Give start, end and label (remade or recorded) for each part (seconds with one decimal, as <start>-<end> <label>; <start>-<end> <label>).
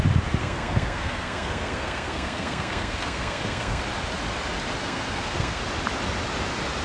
0.0-0.4 recorded; 0.4-3.8 remade; 3.8-4.8 recorded; 4.8-5.6 remade; 5.6-6.8 recorded